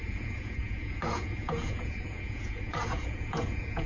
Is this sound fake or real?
fake